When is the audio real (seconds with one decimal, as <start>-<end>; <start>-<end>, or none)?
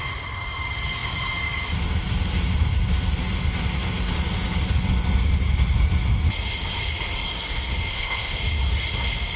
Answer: 0.0-7.9; 8.4-9.4